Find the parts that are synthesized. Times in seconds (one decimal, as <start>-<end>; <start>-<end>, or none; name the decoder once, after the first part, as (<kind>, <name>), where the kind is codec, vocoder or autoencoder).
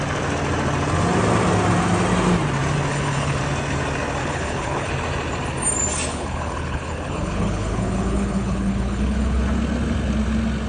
2.9-3.4 (codec, HILCodec); 4.2-4.9; 6.1-9.4